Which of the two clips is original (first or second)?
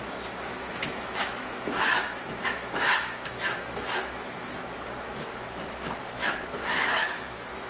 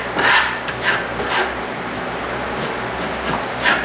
second